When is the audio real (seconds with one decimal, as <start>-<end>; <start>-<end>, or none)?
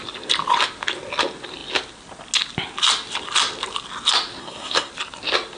0.0-4.4; 4.9-5.6